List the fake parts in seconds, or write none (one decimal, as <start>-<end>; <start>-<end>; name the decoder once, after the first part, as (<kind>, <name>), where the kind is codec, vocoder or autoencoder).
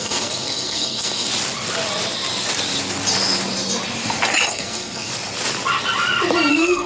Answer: 0.0-1.3 (codec, SNAC); 4.5-5.1; 6.5-6.9